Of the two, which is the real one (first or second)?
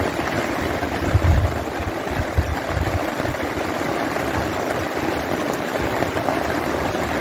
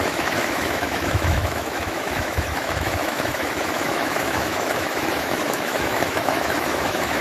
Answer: first